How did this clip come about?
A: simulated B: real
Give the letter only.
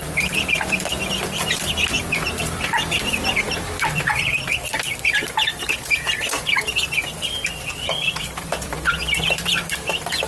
A